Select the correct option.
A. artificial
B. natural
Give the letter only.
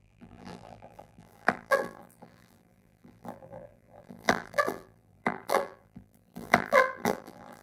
A